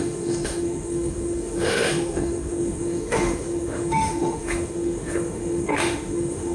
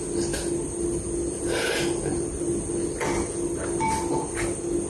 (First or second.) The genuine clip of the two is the second